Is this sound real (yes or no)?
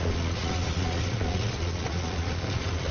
no